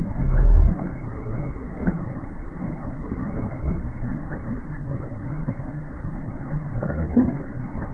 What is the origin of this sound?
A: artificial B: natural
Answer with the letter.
A